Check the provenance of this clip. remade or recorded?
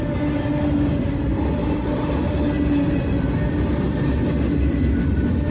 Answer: recorded